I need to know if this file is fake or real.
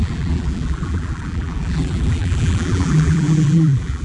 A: fake